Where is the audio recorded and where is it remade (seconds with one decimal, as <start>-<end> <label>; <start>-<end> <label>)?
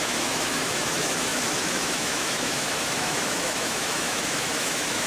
0.0-5.1 remade